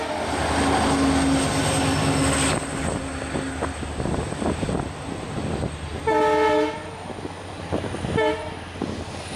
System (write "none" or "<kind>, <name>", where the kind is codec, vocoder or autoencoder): none